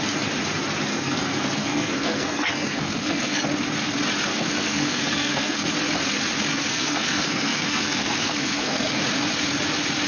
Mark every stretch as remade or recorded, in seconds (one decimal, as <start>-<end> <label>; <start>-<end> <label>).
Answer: 0.0-0.9 recorded; 0.9-3.4 remade; 3.4-4.3 recorded; 4.3-5.7 remade; 5.7-6.5 recorded; 6.5-9.0 remade; 9.0-10.1 recorded